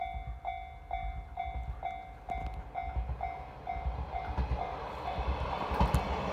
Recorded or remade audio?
recorded